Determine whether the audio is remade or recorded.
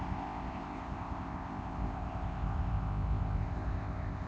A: remade